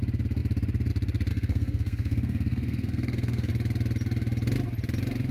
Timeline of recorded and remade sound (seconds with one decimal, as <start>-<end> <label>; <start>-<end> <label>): 0.0-1.3 recorded; 1.3-3.5 remade; 3.5-5.3 recorded